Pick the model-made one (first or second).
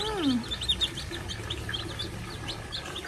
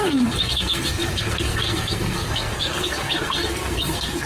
second